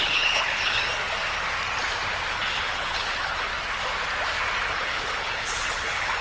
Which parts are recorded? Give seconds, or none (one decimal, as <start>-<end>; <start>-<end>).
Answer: 0.8-2.3; 3.5-4.7